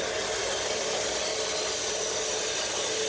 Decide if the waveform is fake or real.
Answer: real